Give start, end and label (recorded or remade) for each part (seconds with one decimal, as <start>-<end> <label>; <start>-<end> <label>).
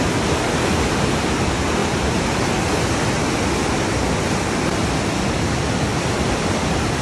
0.0-0.6 recorded; 0.6-1.4 remade; 1.4-5.9 recorded; 5.9-6.6 remade; 6.6-7.0 recorded